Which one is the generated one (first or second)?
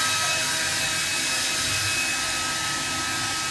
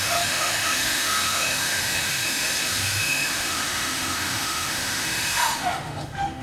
second